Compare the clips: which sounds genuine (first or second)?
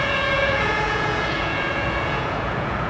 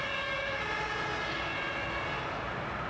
second